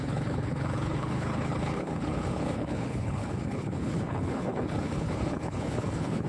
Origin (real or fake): fake